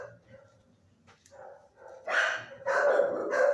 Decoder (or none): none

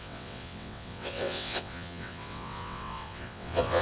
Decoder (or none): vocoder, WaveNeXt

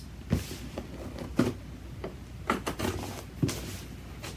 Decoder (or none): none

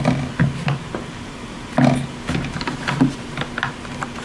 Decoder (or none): none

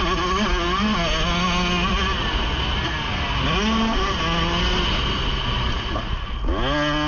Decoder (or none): none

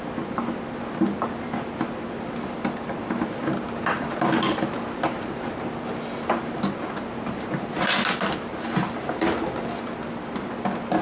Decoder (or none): none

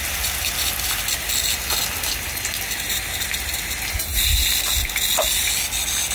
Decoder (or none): none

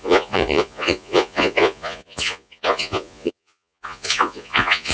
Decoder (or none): vocoder, Vocos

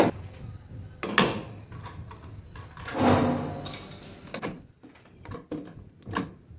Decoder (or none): none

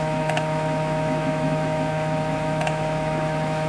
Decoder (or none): autoencoder, DAC-VAE